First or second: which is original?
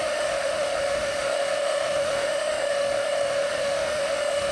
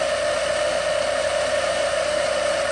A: second